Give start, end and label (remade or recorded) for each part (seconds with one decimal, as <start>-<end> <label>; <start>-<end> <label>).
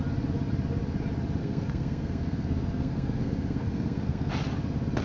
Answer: 0.0-1.4 recorded; 1.4-4.3 remade; 4.3-5.0 recorded